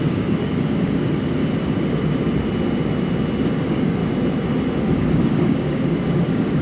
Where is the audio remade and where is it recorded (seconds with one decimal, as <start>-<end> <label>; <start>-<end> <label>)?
0.0-1.4 remade; 1.4-3.6 recorded; 3.6-4.0 remade; 4.0-4.8 recorded; 4.8-6.6 remade